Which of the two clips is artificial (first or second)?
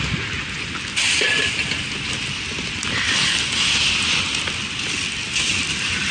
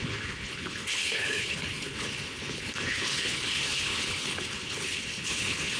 second